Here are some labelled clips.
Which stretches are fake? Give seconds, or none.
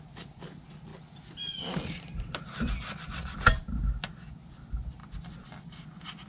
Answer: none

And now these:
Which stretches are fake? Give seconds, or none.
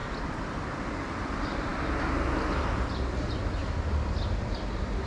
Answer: 1.1-1.7 (vocoder, BigVGAN v2); 3.2-5.1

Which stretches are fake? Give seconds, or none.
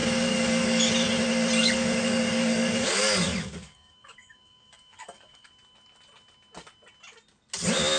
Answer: 0.0-0.8 (codec, DAC); 1.6-5.5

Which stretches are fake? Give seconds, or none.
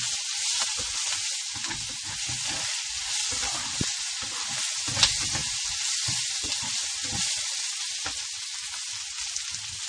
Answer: none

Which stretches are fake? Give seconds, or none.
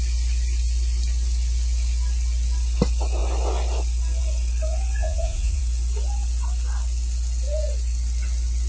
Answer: 5.0-5.6 (vocoder, Vocos)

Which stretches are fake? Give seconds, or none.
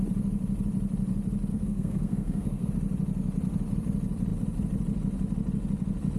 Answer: 1.5-2.7 (codec, SNAC)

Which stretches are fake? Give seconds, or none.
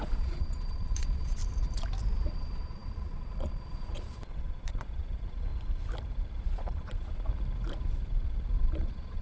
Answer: 0.0-1.4 (vocoder, Vocos); 2.3-5.5; 6.4-7.3; 8.6-9.2